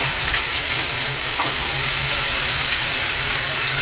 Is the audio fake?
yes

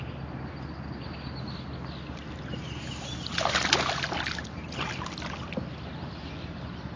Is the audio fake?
no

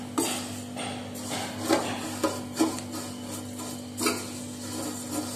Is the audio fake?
no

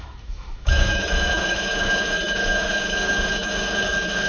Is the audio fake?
yes